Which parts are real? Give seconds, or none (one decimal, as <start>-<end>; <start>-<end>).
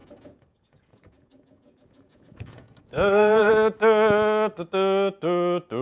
3.5-5.8